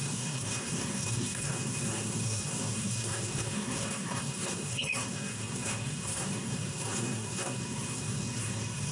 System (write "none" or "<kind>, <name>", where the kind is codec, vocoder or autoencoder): codec, SNAC